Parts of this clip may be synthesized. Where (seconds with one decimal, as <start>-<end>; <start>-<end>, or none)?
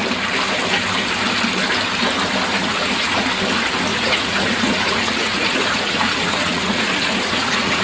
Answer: 2.5-3.3; 3.9-7.8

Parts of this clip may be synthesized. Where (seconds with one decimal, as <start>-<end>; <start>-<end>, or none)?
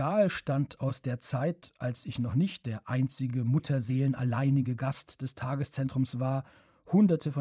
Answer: 0.0-0.9; 2.1-7.4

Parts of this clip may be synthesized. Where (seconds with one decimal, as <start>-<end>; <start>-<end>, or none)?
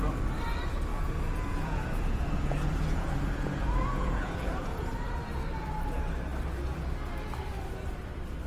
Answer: 0.9-5.2